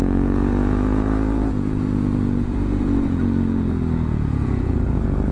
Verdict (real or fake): fake